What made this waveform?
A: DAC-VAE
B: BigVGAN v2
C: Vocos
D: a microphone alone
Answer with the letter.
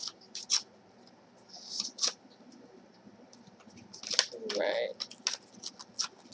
D